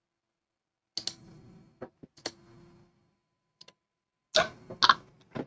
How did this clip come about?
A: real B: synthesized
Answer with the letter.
A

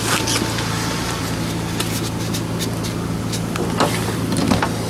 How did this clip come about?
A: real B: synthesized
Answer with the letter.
A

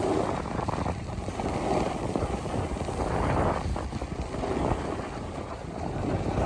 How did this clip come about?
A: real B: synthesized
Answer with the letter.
A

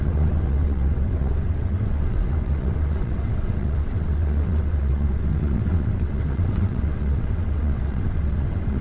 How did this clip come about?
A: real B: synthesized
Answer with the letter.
B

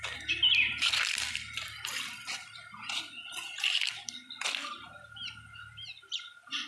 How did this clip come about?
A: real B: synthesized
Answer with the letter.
B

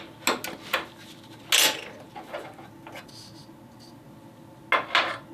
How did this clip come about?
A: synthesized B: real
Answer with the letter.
B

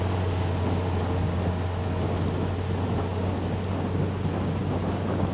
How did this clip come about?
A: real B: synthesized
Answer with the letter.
A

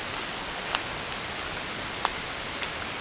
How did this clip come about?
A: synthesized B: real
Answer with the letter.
B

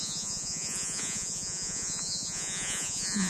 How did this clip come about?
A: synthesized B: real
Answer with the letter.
A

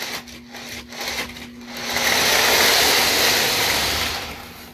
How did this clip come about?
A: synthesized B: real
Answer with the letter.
B